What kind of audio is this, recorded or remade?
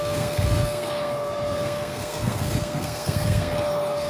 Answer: remade